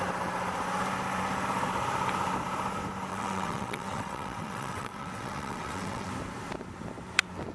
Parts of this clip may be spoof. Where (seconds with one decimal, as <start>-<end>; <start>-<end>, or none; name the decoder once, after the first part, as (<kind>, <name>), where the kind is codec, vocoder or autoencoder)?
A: 3.1-6.1 (vocoder, WaveNeXt)